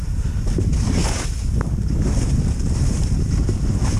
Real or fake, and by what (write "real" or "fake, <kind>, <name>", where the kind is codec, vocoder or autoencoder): real